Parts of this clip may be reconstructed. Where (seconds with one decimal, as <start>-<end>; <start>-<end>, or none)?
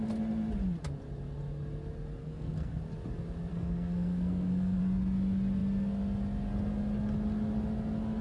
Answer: 2.2-2.8; 3.5-4.8